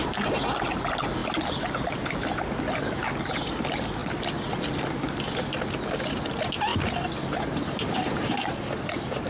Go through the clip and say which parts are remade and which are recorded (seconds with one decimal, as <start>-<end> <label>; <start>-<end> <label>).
0.0-1.2 recorded; 1.2-3.1 remade; 3.1-4.0 recorded; 4.0-5.6 remade; 5.6-6.7 recorded; 6.7-9.3 remade